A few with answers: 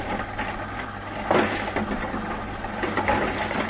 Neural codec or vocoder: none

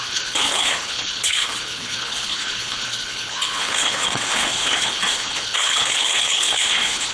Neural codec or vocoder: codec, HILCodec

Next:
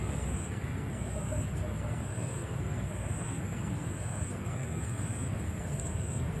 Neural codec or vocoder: codec, SNAC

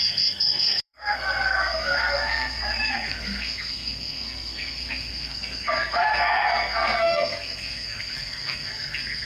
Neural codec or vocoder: codec, SNAC